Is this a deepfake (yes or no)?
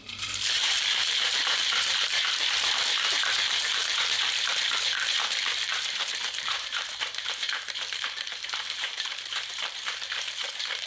yes